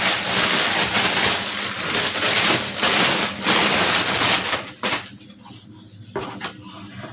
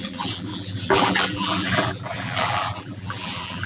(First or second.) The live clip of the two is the first